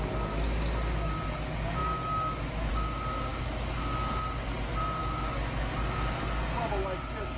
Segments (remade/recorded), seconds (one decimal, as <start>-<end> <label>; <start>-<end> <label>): 0.0-1.8 recorded; 1.8-2.7 remade; 2.7-3.3 recorded; 3.3-4.1 remade; 4.1-5.0 recorded; 5.0-5.7 remade; 5.7-7.4 recorded